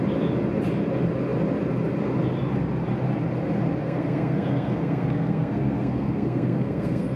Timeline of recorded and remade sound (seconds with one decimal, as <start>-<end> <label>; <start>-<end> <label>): 0.0-3.8 recorded; 3.8-7.2 remade